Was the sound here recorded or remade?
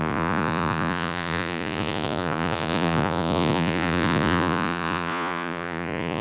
remade